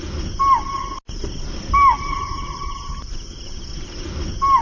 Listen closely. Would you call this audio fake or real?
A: real